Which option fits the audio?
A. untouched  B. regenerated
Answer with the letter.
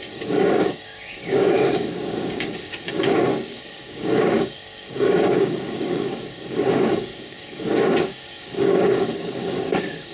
B